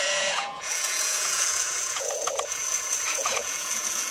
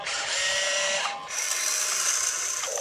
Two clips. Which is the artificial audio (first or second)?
first